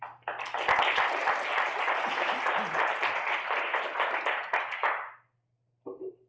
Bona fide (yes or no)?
yes